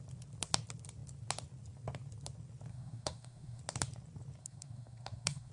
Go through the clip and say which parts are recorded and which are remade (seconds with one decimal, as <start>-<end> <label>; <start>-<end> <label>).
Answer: 0.0-2.7 recorded; 2.7-3.6 remade; 3.6-4.4 recorded; 4.4-5.5 remade